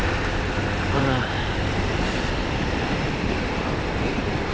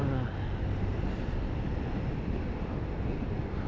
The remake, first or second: first